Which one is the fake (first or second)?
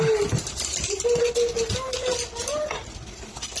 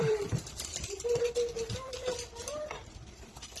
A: second